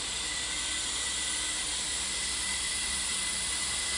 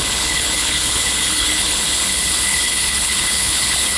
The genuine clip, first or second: first